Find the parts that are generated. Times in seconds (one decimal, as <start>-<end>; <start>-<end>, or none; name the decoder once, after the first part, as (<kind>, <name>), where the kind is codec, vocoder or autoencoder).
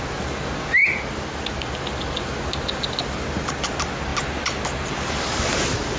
none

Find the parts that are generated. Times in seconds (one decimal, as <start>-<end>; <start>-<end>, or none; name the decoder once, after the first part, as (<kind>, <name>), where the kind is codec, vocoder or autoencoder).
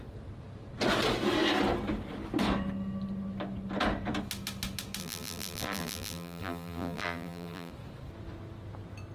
5.0-7.7 (vocoder, BigVGAN v2)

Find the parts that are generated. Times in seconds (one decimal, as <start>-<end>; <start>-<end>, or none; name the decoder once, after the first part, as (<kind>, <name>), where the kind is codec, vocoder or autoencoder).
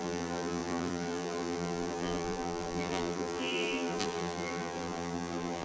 0.0-5.6 (vocoder, BigVGAN v2)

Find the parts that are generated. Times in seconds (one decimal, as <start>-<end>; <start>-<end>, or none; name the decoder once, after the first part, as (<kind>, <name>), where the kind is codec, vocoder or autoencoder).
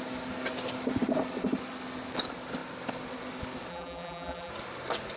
3.7-4.5 (vocoder, BigVGAN v2)